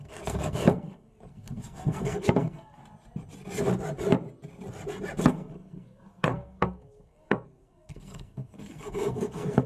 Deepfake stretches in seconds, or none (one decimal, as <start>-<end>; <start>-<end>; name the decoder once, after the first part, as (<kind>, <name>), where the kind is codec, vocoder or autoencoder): 0.0-2.8 (codec, SNAC); 5.2-9.7